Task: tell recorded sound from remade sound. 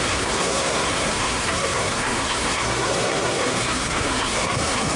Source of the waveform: remade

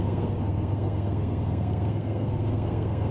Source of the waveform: remade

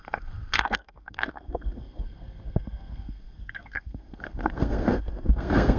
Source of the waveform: remade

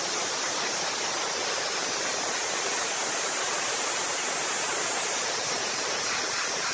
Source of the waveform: recorded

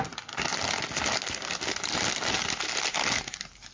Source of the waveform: recorded